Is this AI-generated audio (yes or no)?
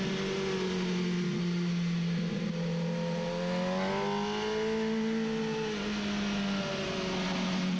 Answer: no